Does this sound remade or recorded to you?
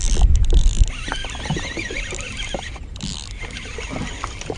recorded